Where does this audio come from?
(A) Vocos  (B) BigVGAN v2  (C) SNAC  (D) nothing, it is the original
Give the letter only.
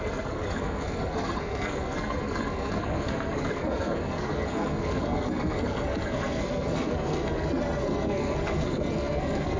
C